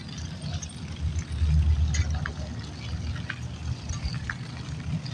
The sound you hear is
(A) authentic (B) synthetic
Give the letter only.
A